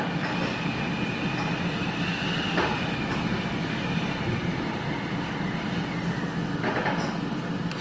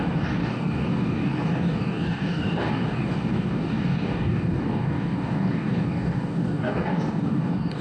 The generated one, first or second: second